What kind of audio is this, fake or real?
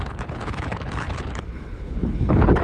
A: fake